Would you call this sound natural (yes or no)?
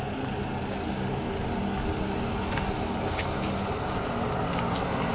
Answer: yes